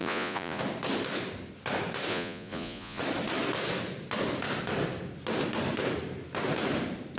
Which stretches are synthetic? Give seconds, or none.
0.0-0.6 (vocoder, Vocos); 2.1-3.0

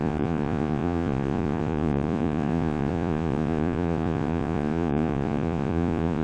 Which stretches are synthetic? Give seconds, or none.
0.0-6.2 (vocoder, Vocos)

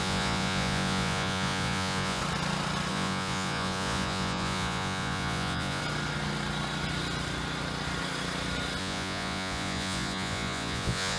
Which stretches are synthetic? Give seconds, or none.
0.0-2.2 (vocoder, Vocos); 2.9-5.8; 8.8-11.2